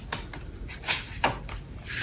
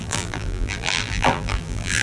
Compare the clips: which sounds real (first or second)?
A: first